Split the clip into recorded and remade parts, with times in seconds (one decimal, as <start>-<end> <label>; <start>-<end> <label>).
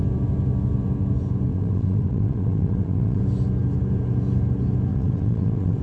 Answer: 0.0-1.5 recorded; 1.5-3.2 remade; 3.2-4.9 recorded; 4.9-5.8 remade